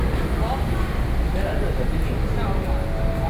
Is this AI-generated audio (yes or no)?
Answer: no